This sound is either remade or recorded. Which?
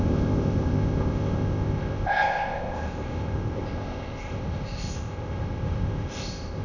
remade